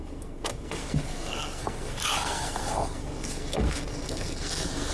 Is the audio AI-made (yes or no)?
yes